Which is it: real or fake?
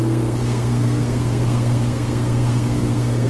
fake